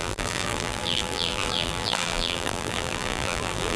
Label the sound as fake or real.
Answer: fake